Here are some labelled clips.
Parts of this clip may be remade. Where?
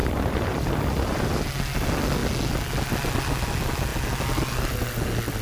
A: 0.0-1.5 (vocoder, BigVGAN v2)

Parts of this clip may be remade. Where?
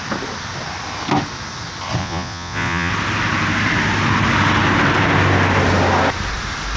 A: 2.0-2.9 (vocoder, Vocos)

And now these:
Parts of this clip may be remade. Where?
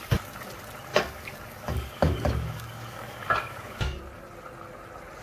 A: 0.9-4.0 (codec, DAC)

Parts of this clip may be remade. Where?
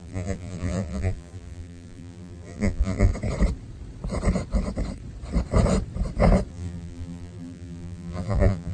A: 0.0-3.1 (vocoder, BigVGAN v2); 6.5-8.7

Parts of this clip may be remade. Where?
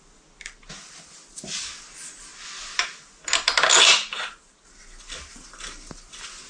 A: none